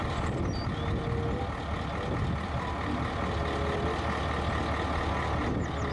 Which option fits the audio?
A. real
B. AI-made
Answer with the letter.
A